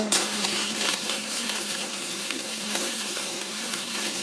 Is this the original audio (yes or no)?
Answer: no